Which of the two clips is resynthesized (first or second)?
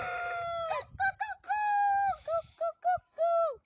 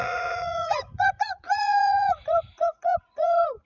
second